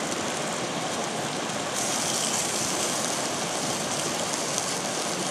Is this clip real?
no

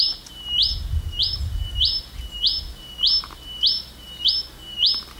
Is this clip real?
yes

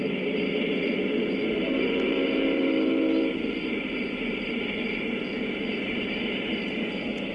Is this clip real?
no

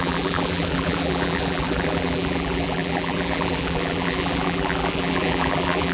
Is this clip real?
no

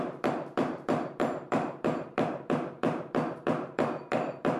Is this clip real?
no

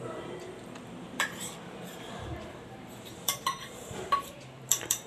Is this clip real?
no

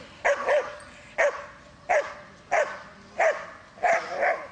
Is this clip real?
yes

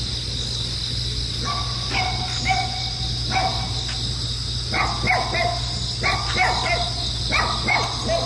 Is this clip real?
yes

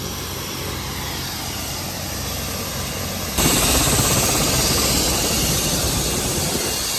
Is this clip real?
yes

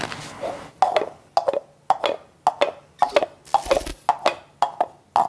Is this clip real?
yes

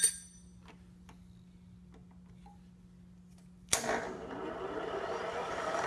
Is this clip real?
yes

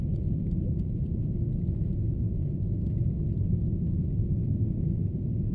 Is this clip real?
yes